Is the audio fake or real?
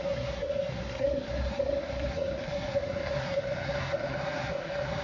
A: fake